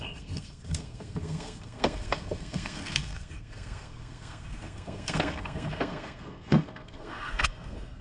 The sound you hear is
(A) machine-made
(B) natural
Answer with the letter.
A